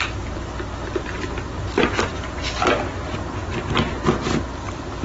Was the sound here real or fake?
real